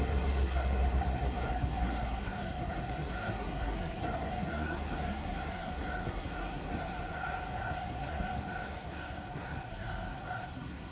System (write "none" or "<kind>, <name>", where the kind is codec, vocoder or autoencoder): codec, SNAC